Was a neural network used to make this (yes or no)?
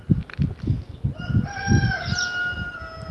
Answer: no